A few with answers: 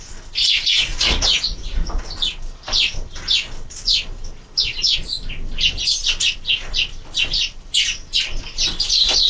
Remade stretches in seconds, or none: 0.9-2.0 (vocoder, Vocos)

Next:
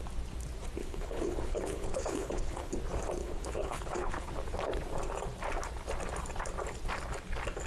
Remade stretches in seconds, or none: 0.8-2.8 (codec, HILCodec); 3.2-4.3

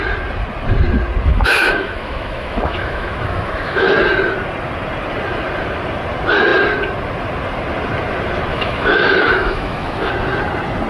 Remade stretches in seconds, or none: 1.3-3.9 (autoencoder, DAC-VAE); 8.5-10.1

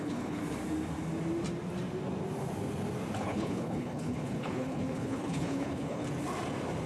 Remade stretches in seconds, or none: 0.0-0.4 (codec, HILCodec); 3.2-6.0

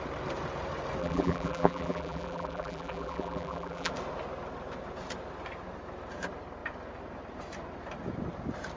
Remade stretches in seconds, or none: 1.0-3.9 (vocoder, BigVGAN v2)

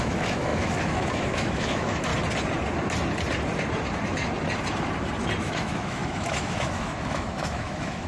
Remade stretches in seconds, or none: 0.0-2.1 (autoencoder, DAC-VAE); 5.4-8.1

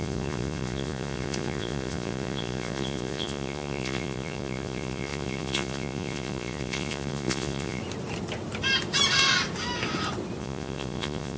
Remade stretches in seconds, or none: 0.0-7.8 (vocoder, Vocos); 10.4-11.4